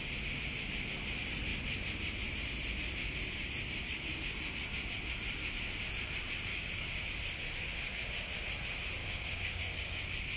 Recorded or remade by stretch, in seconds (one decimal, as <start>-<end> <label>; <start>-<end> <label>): 0.0-6.5 recorded; 6.5-7.1 remade; 7.1-9.0 recorded; 9.0-10.0 remade; 10.0-10.4 recorded